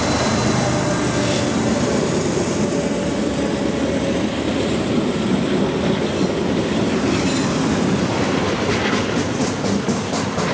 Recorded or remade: recorded